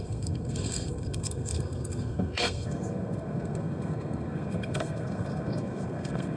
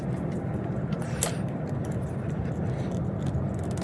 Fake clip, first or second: first